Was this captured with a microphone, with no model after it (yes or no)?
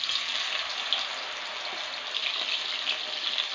yes